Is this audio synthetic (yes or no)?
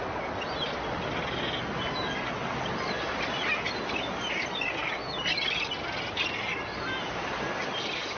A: no